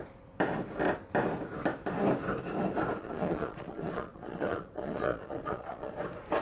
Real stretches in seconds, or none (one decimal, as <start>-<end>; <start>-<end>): 0.0-3.0; 5.9-6.4